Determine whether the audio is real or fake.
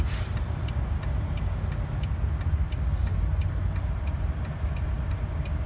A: real